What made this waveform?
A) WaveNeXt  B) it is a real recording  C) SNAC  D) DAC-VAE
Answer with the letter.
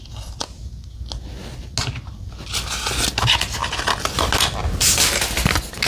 B